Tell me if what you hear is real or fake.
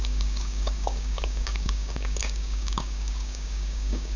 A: fake